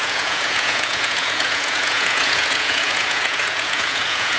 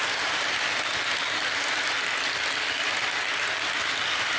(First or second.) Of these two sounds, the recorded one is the second